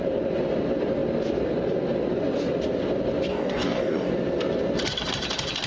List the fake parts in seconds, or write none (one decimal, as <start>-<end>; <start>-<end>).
3.3-4.1